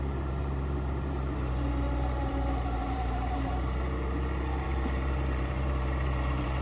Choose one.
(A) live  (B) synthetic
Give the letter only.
B